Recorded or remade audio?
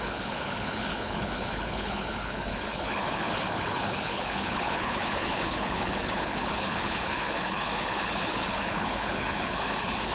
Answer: remade